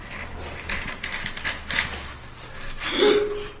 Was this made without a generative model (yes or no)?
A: yes